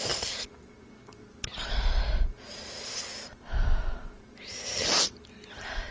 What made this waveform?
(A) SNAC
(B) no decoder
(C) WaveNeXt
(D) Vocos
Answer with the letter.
B